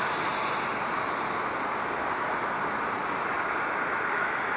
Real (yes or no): yes